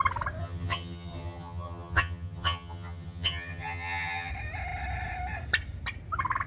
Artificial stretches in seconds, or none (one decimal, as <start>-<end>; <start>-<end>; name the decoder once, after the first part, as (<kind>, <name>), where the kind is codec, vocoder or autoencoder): 0.4-4.3 (vocoder, HiFi-GAN)